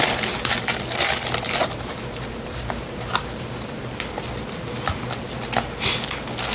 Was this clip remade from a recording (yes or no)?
no